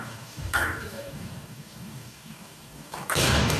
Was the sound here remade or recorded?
remade